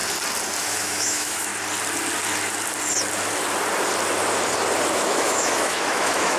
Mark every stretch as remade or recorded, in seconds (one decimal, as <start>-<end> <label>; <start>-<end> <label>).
0.0-0.6 recorded; 0.6-1.5 remade; 1.5-4.9 recorded; 4.9-6.4 remade